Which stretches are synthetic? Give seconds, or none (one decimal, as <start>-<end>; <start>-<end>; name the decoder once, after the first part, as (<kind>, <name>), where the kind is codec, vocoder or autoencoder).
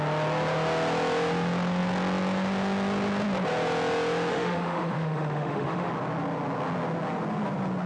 4.3-5.9 (autoencoder, DAC-VAE)